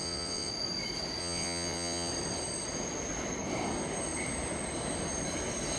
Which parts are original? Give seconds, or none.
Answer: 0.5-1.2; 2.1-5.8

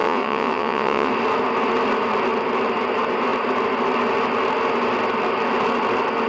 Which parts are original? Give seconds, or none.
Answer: 1.1-6.3

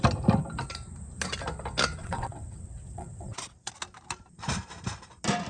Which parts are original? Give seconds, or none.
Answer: 0.0-2.0; 3.7-5.5

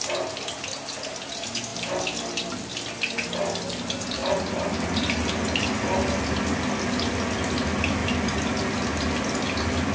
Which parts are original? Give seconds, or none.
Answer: 0.0-9.9

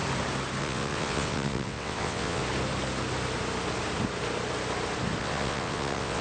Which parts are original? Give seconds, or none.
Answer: 0.0-0.6; 2.4-5.2

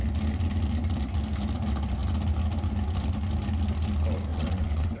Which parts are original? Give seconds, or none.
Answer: 0.0-4.3

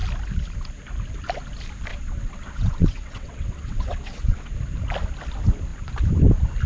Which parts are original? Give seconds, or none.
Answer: 0.0-1.9; 4.5-6.7

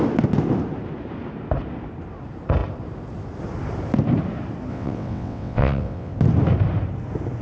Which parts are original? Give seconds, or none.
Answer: 0.0-4.7; 6.1-7.4